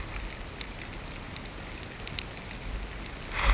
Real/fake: real